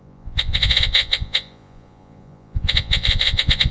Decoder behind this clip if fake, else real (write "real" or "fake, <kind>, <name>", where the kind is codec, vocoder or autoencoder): fake, vocoder, Vocos